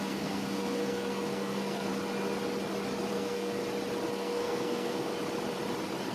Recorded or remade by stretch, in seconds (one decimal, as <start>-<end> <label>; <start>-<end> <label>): 0.0-1.9 remade; 1.9-3.1 recorded; 3.1-3.6 remade; 3.6-4.1 recorded; 4.1-5.1 remade; 5.1-6.1 recorded